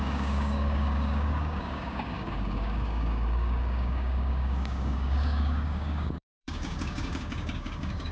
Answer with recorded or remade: remade